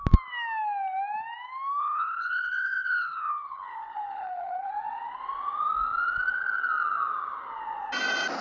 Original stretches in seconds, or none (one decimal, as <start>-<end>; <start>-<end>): 0.0-1.8; 4.7-8.4